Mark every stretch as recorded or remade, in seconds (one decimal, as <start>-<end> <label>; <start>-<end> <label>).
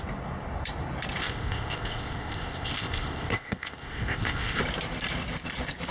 0.0-1.2 recorded; 1.2-4.6 remade; 4.6-5.9 recorded